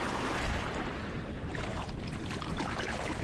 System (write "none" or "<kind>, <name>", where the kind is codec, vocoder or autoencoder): none